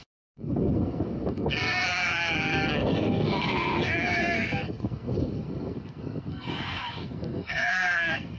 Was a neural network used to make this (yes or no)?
yes